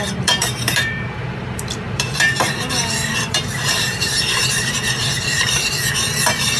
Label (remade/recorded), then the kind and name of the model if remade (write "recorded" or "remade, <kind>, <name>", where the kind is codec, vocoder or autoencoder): remade, vocoder, BigVGAN v2